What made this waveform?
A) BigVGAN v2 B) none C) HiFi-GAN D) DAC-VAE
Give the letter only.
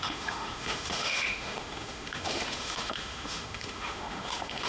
D